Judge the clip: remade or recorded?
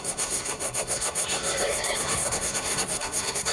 remade